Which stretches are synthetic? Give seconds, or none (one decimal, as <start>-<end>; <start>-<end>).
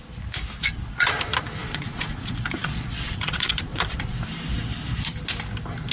0.6-1.2; 1.6-3.8